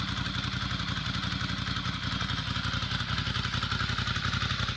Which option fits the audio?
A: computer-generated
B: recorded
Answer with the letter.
B